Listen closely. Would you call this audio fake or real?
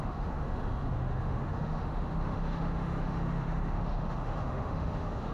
fake